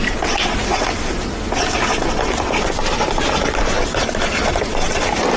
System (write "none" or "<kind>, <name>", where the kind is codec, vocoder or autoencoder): none